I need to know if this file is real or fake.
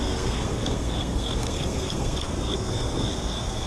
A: fake